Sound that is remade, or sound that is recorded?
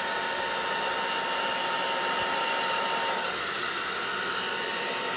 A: recorded